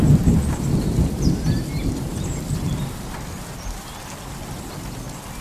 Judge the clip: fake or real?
real